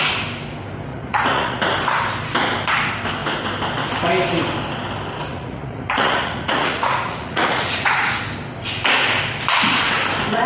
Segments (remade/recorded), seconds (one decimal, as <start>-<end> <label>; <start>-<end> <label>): 0.0-0.9 recorded; 0.9-1.6 remade; 1.6-5.3 recorded; 5.3-8.2 remade; 8.2-10.5 recorded